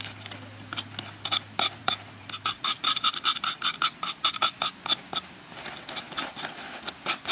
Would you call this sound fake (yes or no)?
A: no